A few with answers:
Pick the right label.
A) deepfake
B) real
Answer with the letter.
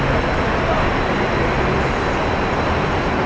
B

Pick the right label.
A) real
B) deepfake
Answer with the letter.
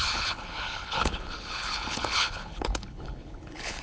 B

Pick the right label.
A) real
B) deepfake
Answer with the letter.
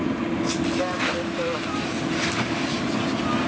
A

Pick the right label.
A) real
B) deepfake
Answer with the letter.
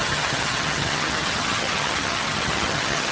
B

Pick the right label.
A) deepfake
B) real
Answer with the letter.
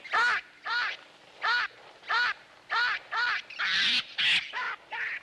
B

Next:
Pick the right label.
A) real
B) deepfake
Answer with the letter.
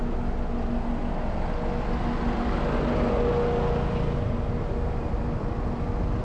A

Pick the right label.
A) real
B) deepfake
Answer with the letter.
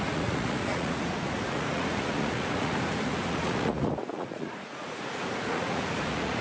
B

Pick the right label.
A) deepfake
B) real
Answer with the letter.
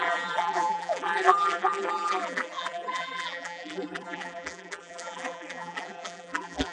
A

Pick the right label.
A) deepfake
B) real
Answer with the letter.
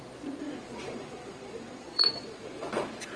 A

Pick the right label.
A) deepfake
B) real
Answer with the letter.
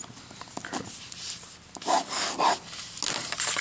B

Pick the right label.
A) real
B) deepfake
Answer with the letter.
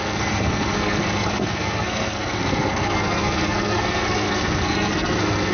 B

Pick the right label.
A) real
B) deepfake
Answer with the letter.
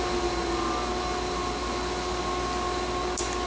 A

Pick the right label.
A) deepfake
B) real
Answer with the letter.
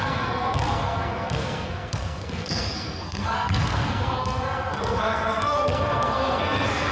A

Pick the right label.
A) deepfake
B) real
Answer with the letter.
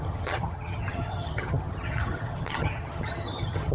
A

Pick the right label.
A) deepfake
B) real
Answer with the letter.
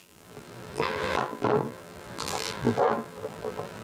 A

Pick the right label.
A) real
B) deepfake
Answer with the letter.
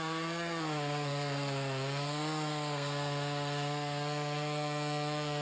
B